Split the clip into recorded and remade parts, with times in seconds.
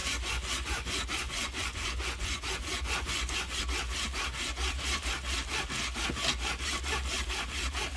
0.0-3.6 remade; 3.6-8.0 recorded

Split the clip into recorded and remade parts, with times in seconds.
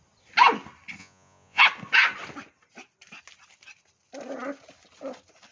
0.0-1.0 recorded; 1.0-1.6 remade; 1.6-5.5 recorded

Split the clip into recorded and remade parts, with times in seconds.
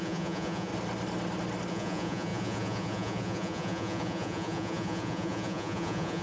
0.0-0.7 remade; 0.7-1.7 recorded; 1.7-6.2 remade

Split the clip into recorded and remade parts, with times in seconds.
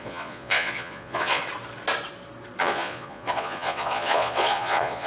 0.0-1.4 remade; 1.4-2.6 recorded; 2.6-5.1 remade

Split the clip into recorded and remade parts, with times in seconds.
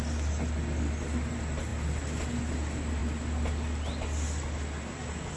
0.0-5.4 recorded